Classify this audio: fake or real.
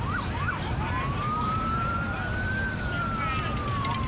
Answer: fake